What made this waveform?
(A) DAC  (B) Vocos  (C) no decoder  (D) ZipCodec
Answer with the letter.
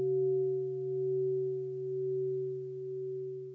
C